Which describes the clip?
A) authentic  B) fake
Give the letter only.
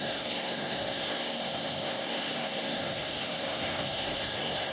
B